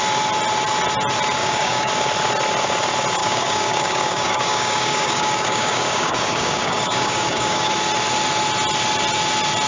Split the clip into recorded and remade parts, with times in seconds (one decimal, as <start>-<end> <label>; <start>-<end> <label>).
0.0-1.4 recorded; 1.4-1.9 remade; 1.9-3.2 recorded; 3.2-7.7 remade; 7.7-9.7 recorded